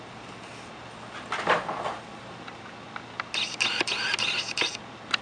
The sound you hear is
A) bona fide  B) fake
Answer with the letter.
A